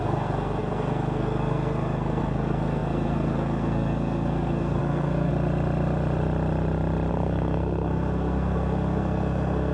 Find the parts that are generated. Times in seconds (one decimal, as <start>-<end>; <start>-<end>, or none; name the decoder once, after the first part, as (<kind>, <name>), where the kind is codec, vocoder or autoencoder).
0.0-5.3 (codec, SNAC); 7.1-9.7